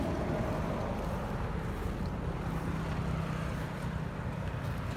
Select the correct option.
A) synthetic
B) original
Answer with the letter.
B